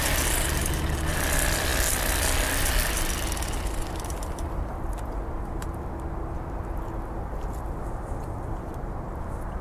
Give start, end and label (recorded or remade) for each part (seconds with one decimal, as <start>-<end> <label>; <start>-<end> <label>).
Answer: 0.0-9.6 recorded